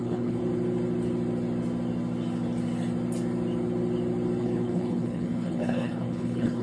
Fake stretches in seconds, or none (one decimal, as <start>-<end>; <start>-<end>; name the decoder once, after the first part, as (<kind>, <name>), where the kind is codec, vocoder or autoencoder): 0.0-0.4 (codec, HILCodec); 4.4-6.6